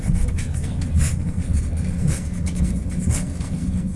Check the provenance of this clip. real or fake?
fake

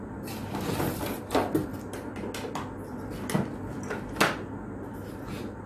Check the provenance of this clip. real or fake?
real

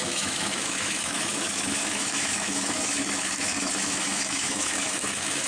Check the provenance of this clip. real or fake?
fake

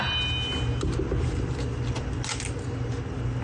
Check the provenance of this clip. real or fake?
real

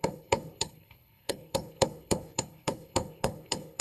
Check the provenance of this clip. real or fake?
fake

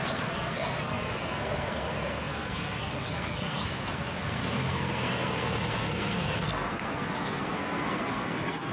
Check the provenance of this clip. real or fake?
fake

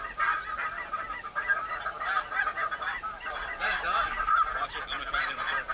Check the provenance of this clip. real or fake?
real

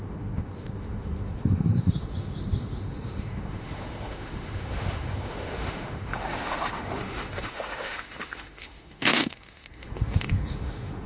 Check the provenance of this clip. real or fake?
fake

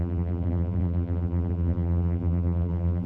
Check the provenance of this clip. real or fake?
fake